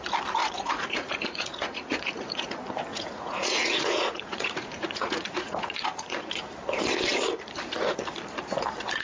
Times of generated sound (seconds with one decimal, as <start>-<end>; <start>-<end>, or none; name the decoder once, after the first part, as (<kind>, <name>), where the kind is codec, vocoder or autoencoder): 0.4-2.5 (vocoder, Vocos); 2.9-6.4